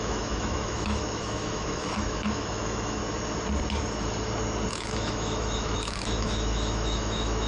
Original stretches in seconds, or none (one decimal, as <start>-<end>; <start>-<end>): 3.0-4.7